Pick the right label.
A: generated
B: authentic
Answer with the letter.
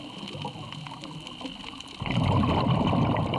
B